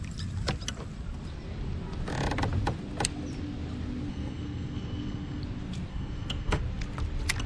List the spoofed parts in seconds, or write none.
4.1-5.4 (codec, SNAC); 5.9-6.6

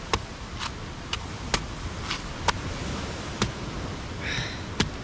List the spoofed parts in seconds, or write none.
none

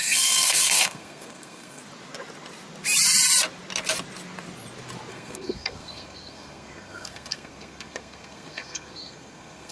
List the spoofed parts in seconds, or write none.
0.0-1.8 (codec, SNAC); 5.1-9.7

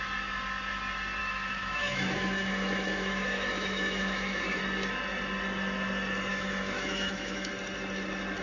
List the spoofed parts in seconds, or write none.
1.2-4.6 (autoencoder, DAC-VAE); 6.3-7.5

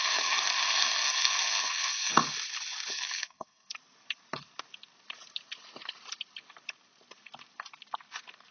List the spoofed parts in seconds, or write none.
0.0-2.2 (codec, SNAC); 2.9-3.7

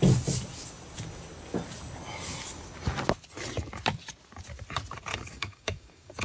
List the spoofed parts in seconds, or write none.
5.1-6.2 (codec, DAC)

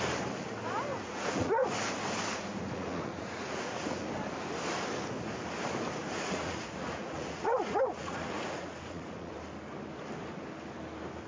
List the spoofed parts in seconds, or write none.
0.9-1.7 (vocoder, Vocos); 2.3-4.1; 6.0-9.3

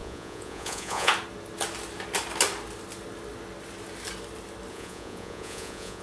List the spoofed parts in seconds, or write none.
0.0-1.1 (vocoder, Vocos); 4.7-6.0